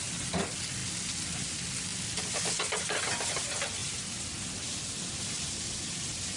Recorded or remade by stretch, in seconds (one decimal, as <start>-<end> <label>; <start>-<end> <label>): 0.0-6.4 recorded